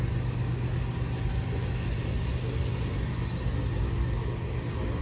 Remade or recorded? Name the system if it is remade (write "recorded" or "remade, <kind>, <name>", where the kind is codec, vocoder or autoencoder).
recorded